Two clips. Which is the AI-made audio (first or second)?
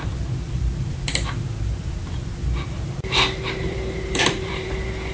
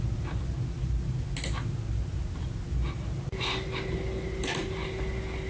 first